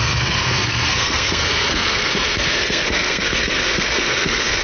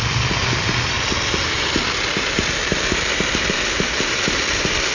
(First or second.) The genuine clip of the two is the second